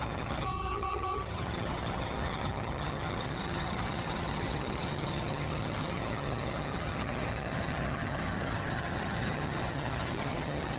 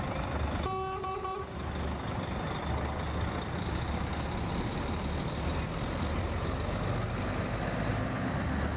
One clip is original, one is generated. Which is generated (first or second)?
first